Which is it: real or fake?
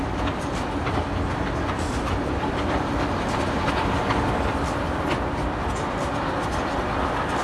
real